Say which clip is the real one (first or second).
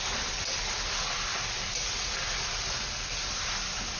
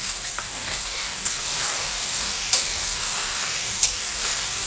first